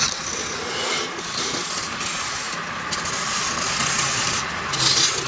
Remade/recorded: recorded